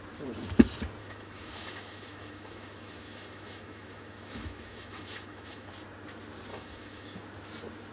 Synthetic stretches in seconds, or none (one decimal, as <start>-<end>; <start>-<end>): 1.0-5.7; 6.5-7.2